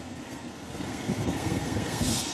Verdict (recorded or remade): remade